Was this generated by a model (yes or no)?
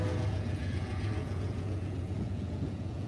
yes